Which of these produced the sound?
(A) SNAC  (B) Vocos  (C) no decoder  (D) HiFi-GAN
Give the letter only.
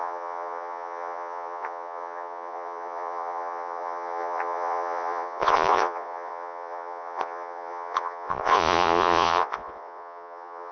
B